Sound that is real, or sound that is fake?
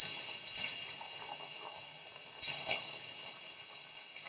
fake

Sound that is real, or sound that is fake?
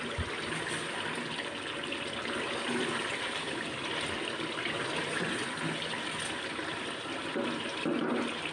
real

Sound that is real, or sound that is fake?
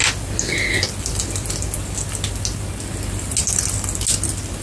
real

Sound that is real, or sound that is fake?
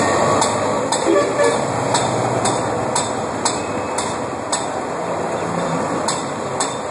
real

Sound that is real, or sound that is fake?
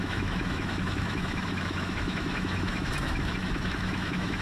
fake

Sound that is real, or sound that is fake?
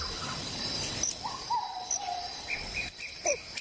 real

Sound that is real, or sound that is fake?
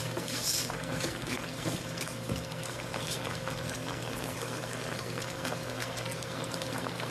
fake